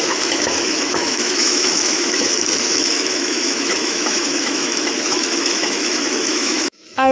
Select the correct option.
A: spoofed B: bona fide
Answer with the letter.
A